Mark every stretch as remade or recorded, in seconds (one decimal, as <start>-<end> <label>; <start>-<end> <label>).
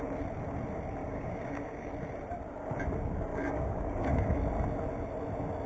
0.0-1.0 recorded; 1.0-1.9 remade; 1.9-3.3 recorded; 3.3-4.4 remade; 4.4-5.7 recorded